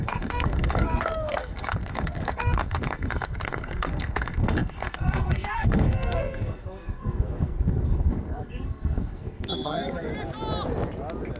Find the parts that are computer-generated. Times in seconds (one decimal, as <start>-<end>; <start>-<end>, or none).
0.0-10.1